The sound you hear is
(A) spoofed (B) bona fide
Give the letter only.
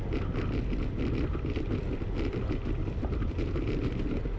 B